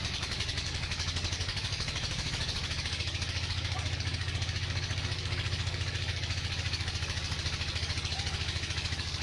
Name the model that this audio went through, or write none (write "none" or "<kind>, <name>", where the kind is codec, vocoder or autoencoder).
codec, DAC